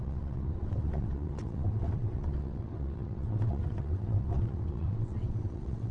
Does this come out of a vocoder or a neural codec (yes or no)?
yes